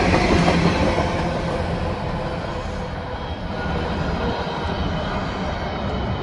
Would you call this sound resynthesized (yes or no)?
no